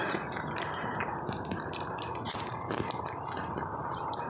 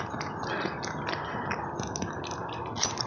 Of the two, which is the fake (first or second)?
first